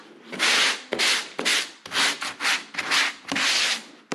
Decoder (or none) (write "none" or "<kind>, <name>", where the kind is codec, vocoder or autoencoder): none